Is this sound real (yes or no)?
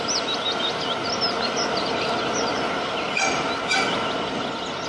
yes